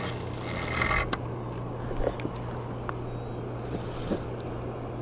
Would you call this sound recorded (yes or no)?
yes